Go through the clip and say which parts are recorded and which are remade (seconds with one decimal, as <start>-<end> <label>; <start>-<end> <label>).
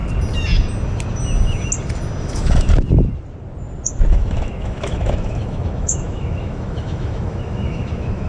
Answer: 0.0-2.2 recorded; 2.2-2.7 remade; 2.7-4.1 recorded; 4.1-8.3 remade